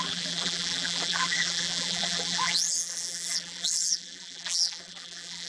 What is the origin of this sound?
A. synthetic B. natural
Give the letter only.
A